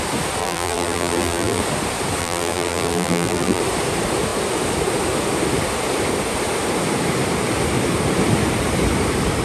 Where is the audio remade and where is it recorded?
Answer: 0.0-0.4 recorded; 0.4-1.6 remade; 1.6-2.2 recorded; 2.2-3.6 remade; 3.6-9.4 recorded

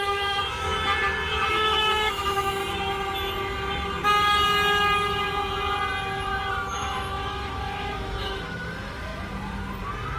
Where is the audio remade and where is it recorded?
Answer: 0.0-0.7 remade; 0.7-1.5 recorded; 1.5-2.6 remade; 2.6-6.5 recorded; 6.5-9.1 remade; 9.1-10.2 recorded